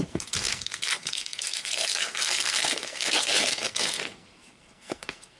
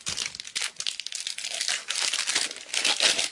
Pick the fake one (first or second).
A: first